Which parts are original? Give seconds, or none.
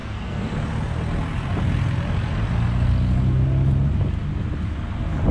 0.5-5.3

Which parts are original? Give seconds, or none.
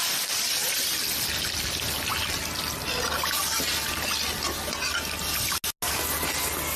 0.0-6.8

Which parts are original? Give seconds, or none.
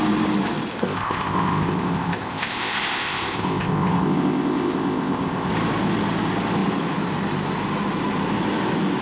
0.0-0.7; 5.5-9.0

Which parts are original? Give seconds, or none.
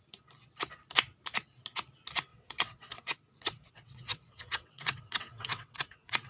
0.0-2.3